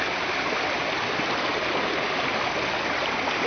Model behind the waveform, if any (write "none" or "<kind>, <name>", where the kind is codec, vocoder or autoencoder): none